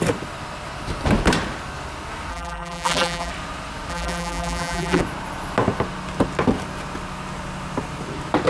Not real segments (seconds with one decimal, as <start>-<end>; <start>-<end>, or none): 2.3-3.3; 3.9-5.0